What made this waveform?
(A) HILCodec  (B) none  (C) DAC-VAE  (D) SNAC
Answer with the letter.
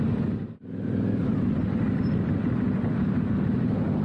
B